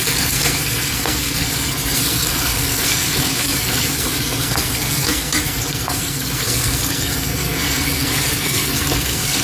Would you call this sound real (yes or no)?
no